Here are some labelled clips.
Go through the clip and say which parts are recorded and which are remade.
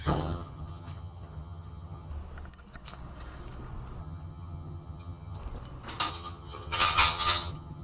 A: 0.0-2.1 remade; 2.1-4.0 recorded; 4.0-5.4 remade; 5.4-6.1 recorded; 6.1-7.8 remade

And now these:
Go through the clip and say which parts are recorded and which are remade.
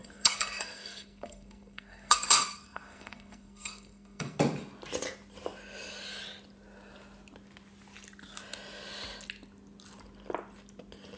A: 0.0-4.4 remade; 4.4-11.2 recorded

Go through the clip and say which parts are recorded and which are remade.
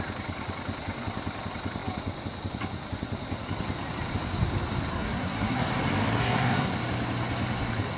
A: 0.0-4.9 recorded; 4.9-5.7 remade; 5.7-6.2 recorded; 6.2-6.7 remade; 6.7-8.0 recorded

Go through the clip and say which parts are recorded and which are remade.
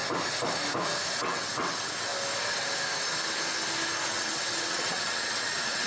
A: 0.0-1.2 recorded; 1.2-2.1 remade; 2.1-4.1 recorded; 4.1-5.9 remade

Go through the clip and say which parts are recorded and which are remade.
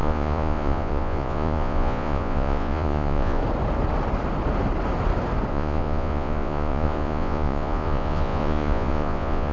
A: 0.0-3.4 remade; 3.4-5.5 recorded; 5.5-9.5 remade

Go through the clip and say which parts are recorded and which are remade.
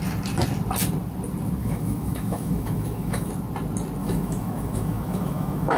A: 0.0-1.6 recorded; 1.6-3.3 remade; 3.3-4.0 recorded; 4.0-5.8 remade